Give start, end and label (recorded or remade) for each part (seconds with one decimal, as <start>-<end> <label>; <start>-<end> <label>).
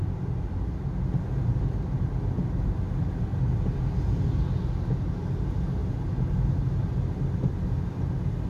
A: 0.0-8.5 recorded